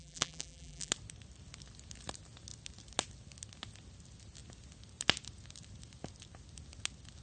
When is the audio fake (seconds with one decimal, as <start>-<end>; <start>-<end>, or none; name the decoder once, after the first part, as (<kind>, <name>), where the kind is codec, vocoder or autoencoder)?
0.0-0.9 (vocoder, BigVGAN v2)